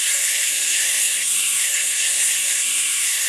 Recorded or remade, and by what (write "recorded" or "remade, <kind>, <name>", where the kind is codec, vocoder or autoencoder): remade, codec, SNAC